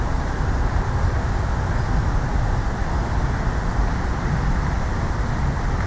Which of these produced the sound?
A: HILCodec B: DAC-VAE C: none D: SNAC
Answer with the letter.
C